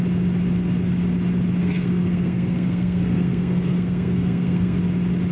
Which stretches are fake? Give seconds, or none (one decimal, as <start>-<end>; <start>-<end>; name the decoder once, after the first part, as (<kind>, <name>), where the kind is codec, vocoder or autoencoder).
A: 1.6-4.8 (codec, SNAC)